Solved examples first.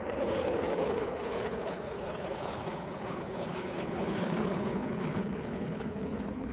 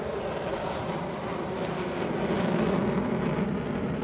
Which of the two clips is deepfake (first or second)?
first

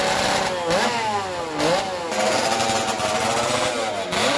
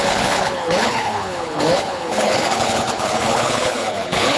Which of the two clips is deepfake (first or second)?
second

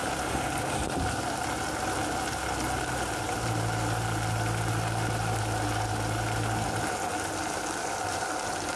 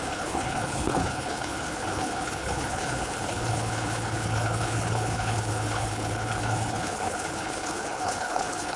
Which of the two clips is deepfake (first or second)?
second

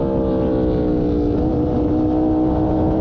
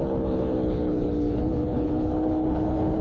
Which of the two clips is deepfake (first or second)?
second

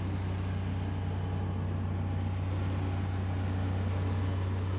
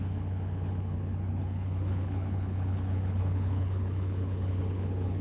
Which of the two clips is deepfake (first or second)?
second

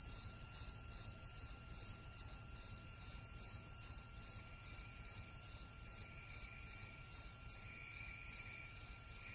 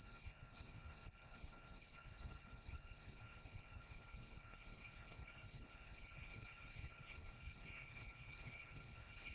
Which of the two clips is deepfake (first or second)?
second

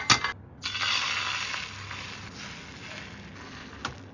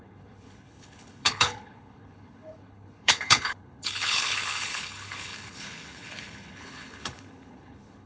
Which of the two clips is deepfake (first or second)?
second